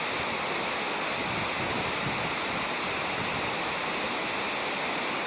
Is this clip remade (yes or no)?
no